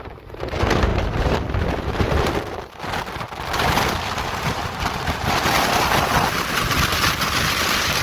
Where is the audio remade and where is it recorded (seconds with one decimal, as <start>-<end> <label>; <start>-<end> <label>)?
0.0-0.9 recorded; 0.9-5.3 remade; 5.3-8.0 recorded

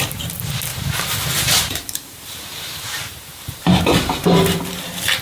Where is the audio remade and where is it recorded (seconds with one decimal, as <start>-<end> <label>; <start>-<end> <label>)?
0.0-0.7 recorded; 0.7-3.8 remade; 3.8-5.2 recorded